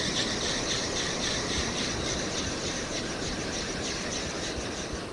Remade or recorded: remade